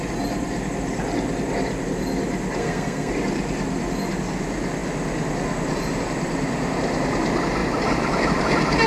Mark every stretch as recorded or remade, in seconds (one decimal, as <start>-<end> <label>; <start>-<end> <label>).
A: 0.0-2.6 recorded; 2.6-3.1 remade; 3.1-8.9 recorded

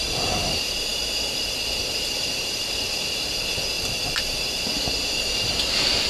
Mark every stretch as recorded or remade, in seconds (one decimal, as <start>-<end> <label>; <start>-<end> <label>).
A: 0.0-6.1 recorded

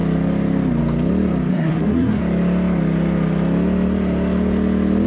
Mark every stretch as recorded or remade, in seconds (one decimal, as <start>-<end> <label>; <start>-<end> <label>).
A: 0.0-1.5 recorded; 1.5-2.2 remade; 2.2-5.1 recorded

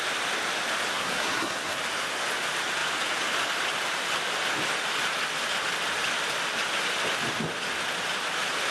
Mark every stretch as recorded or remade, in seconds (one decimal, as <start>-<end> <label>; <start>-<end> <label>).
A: 0.0-0.9 recorded; 0.9-1.8 remade; 1.8-8.7 recorded

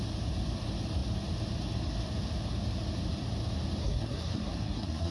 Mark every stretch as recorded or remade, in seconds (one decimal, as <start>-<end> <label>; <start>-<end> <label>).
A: 0.0-3.8 recorded; 3.8-5.1 remade

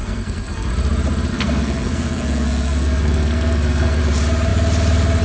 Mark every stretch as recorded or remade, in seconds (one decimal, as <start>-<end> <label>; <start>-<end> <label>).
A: 0.0-0.7 remade; 0.7-1.3 recorded; 1.3-4.0 remade; 4.0-5.2 recorded